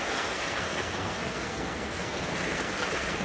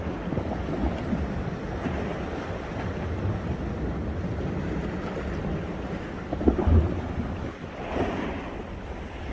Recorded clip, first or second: second